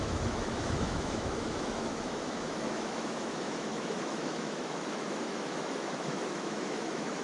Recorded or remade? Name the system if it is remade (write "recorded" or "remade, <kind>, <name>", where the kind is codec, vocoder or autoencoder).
remade, autoencoder, DAC-VAE